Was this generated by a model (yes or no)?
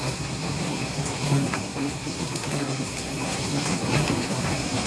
yes